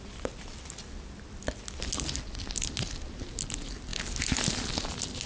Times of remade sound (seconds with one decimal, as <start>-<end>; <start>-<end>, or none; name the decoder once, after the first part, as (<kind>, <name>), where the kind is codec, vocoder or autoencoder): none